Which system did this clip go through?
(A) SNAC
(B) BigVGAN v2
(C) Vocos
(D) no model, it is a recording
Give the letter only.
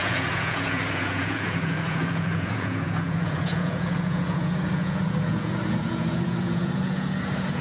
C